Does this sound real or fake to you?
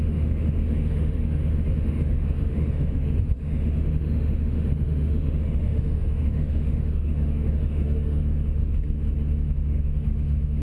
fake